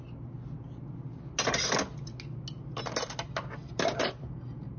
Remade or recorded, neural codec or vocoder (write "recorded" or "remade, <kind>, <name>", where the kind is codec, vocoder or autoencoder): recorded